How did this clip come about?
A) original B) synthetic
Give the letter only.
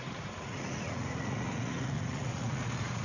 B